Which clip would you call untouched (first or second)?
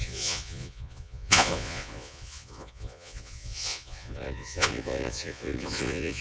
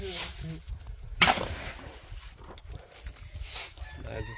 second